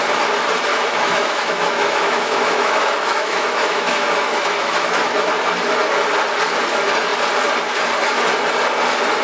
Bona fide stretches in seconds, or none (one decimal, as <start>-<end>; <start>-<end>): 0.0-0.7; 5.3-9.2

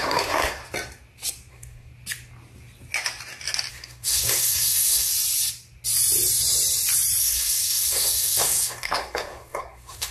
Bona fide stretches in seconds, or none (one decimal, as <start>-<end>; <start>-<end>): 0.6-1.5; 1.9-3.7; 5.1-7.2